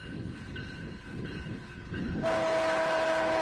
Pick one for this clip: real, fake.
fake